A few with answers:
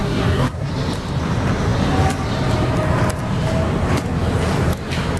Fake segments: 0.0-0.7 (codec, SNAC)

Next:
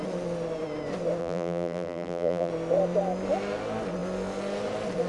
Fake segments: 1.2-2.5 (vocoder, BigVGAN v2)

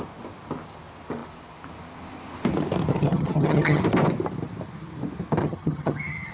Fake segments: 2.9-3.8 (vocoder, HiFi-GAN); 5.4-6.3